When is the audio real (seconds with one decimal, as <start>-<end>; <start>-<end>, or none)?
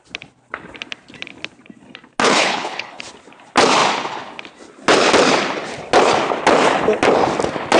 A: 0.0-2.2; 3.0-7.8